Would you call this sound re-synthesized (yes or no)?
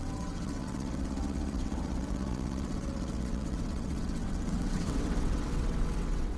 yes